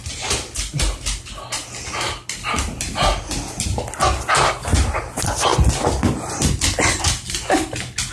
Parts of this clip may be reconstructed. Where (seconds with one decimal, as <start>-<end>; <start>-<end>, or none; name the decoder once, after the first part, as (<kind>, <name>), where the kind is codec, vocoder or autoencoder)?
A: none